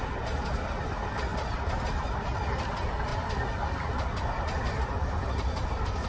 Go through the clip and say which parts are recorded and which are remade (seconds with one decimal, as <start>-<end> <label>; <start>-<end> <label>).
0.0-1.3 recorded; 1.3-1.8 remade; 1.8-3.1 recorded; 3.1-3.7 remade; 3.7-6.1 recorded